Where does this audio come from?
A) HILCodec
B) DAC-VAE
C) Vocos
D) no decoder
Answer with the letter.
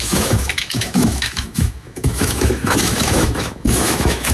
B